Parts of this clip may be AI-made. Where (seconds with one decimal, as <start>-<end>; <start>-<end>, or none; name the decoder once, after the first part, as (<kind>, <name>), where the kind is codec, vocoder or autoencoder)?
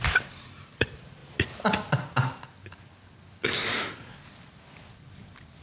none